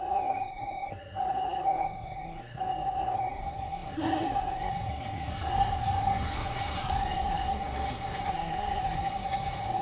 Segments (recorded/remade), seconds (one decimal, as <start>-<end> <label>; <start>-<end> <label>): 0.0-9.8 remade